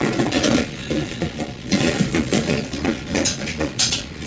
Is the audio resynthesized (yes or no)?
yes